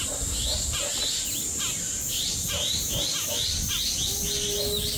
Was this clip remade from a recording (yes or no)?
no